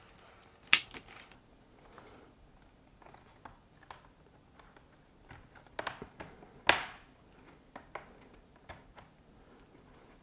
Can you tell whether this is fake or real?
real